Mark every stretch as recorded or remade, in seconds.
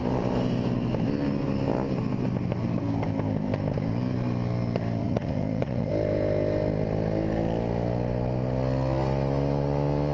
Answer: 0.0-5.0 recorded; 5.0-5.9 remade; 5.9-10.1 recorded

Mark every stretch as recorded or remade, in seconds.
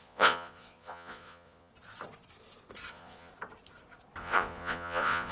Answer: 0.0-1.7 remade; 1.7-2.9 recorded; 2.9-3.3 remade; 3.3-4.2 recorded; 4.2-5.3 remade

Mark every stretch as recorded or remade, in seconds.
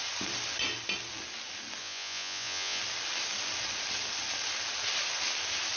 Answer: 0.0-1.8 recorded; 1.8-2.8 remade; 2.8-5.8 recorded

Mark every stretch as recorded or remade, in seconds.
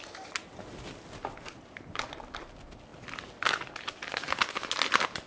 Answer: 0.0-5.3 recorded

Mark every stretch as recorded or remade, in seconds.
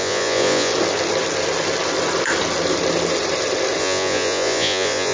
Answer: 0.0-0.7 remade; 0.7-3.8 recorded; 3.8-5.1 remade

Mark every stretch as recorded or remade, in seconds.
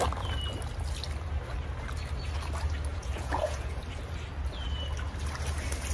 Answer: 0.0-2.9 recorded; 2.9-3.8 remade; 3.8-5.9 recorded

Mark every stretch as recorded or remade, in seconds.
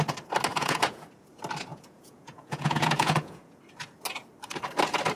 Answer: 0.0-0.5 recorded; 0.5-1.1 remade; 1.1-1.7 recorded; 1.7-3.6 remade; 3.6-5.2 recorded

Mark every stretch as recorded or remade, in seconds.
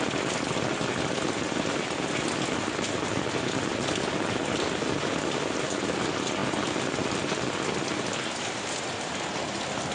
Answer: 0.0-9.9 recorded